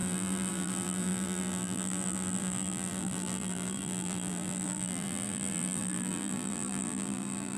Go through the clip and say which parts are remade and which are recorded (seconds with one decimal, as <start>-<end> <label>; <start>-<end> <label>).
0.0-7.6 remade